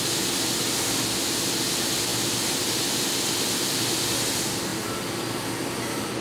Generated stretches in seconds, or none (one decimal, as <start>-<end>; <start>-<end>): none